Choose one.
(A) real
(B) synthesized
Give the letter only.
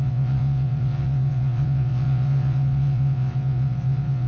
B